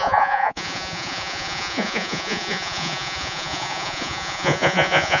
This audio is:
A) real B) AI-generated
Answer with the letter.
B